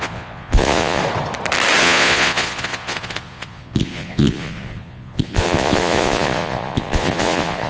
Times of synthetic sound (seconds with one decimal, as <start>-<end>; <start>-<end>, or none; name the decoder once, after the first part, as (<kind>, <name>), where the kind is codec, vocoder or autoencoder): 0.0-1.0 (vocoder, Vocos); 1.8-7.7